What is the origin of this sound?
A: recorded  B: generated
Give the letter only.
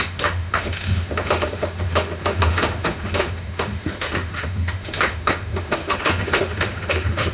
B